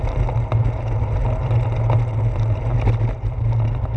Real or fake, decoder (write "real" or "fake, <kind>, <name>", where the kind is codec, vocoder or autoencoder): real